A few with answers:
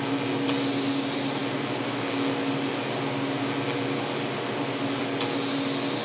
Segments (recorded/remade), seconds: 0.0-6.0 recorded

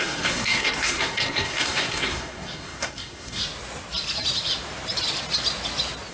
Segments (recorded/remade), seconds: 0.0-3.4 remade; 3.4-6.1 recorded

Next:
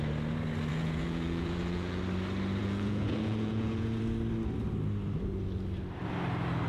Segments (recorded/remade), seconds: 0.0-0.7 recorded; 0.7-2.0 remade; 2.0-2.6 recorded; 2.6-4.0 remade; 4.0-6.7 recorded

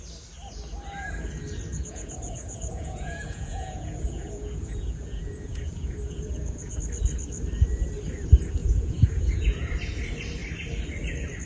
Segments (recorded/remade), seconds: 0.0-1.7 recorded; 1.7-6.8 remade; 6.8-8.6 recorded; 8.6-9.7 remade; 9.7-11.5 recorded

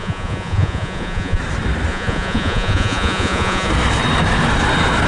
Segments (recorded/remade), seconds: 0.0-1.4 remade; 1.4-1.9 recorded; 1.9-3.7 remade; 3.7-5.1 recorded